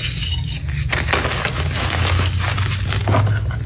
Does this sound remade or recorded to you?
recorded